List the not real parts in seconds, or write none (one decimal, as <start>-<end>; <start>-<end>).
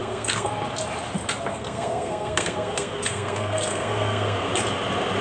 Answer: 0.0-0.5; 1.5-4.5